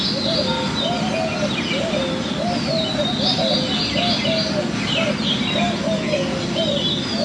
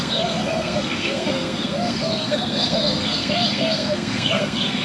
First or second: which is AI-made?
second